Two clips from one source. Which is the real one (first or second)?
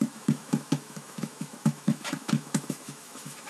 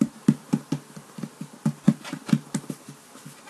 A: second